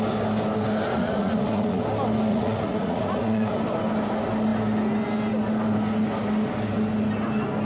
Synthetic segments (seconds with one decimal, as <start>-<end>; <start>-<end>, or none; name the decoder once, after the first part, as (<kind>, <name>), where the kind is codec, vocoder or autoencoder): 0.9-1.8 (vocoder, Vocos); 2.3-3.5